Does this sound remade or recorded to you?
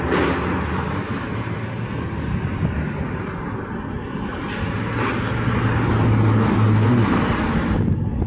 recorded